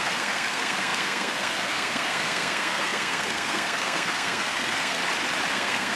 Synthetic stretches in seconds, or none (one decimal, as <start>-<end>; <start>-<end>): 0.0-5.0; 5.5-6.0